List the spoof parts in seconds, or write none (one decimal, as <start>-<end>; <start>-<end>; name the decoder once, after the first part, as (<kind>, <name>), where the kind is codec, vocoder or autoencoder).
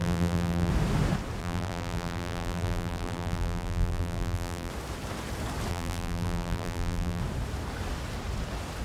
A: 0.0-0.7 (vocoder, BigVGAN v2); 1.4-4.7; 5.7-7.2